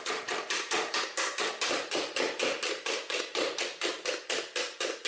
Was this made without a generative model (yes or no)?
yes